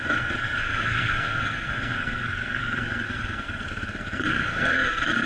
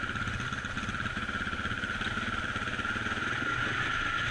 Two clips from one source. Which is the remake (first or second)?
first